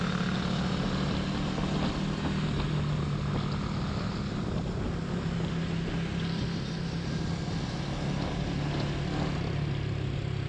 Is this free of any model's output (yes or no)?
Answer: yes